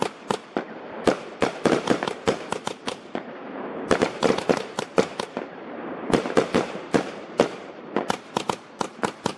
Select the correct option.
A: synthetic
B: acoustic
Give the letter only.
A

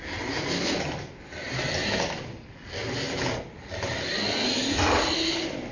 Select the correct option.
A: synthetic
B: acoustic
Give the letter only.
B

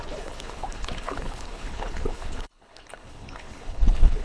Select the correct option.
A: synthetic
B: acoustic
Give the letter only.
A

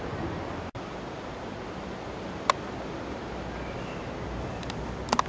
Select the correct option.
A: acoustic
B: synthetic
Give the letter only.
A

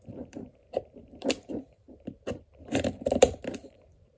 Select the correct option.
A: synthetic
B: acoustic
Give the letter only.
A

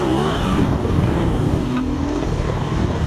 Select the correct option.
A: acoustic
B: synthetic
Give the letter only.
B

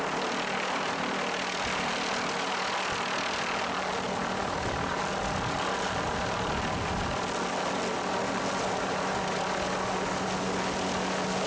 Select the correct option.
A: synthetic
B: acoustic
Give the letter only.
B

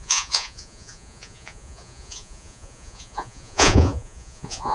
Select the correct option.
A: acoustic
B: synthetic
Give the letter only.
B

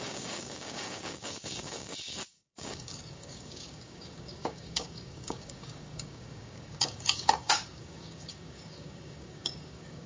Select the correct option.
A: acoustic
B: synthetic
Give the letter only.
B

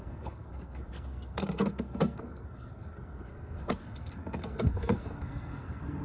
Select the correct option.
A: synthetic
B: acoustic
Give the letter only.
A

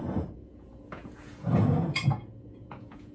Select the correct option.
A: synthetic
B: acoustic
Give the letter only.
A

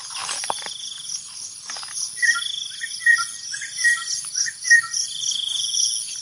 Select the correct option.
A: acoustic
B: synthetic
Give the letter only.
A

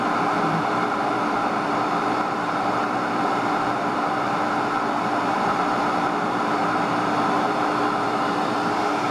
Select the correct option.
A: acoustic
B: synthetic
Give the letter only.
B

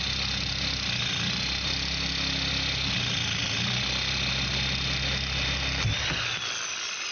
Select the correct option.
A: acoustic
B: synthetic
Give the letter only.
A